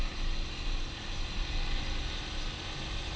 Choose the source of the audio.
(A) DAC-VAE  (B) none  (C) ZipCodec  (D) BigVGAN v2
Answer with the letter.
B